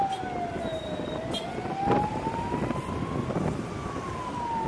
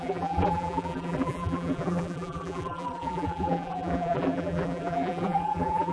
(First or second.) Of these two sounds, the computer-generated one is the second